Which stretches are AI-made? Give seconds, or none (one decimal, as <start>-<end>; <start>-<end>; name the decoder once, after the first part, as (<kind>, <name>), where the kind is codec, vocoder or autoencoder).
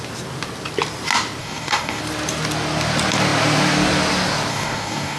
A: 1.4-2.0 (codec, DAC); 4.5-5.2